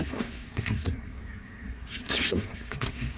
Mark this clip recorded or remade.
remade